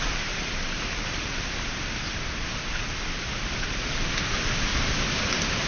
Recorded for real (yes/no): yes